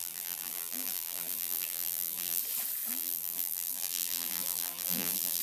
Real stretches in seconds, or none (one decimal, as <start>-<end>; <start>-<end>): 2.4-2.9